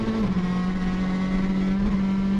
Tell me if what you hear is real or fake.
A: real